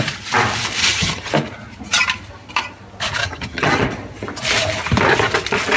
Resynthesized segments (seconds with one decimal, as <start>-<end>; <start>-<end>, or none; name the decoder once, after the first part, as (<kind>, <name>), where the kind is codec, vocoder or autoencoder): 0.8-1.3 (vocoder, HiFi-GAN); 3.2-3.8